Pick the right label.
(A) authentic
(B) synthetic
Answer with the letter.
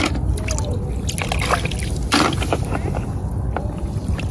A